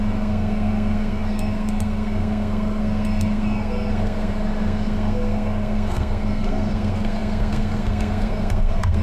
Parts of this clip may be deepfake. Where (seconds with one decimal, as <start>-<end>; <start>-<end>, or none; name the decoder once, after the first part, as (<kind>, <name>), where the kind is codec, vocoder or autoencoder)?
0.0-9.0 (codec, SNAC)